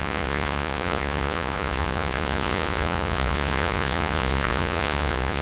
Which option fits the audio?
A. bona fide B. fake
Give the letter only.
B